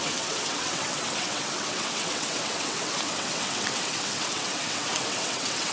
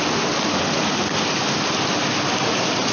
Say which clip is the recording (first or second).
second